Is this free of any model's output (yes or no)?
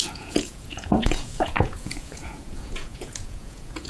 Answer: no